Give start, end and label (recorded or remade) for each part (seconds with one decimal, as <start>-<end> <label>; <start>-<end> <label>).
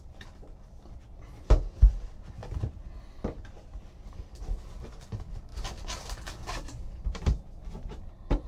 0.0-5.5 recorded; 5.5-8.1 remade; 8.1-8.5 recorded